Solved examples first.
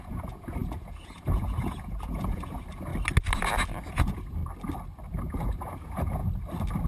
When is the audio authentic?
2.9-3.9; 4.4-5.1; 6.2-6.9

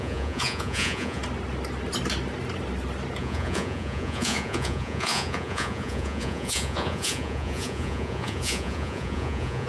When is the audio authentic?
1.2-3.2

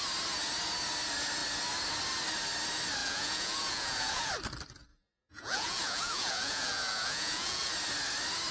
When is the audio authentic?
0.0-3.0; 4.3-4.9; 7.7-8.5

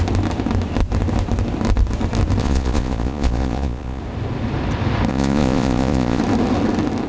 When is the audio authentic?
0.0-2.4; 4.0-5.1; 6.2-7.1